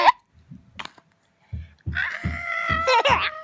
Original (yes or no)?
yes